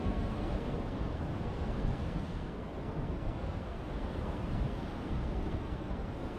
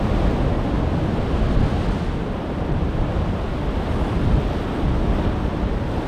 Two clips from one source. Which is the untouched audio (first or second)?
second